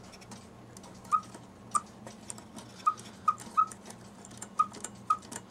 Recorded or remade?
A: recorded